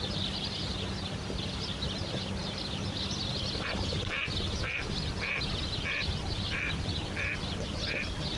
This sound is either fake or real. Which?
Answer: real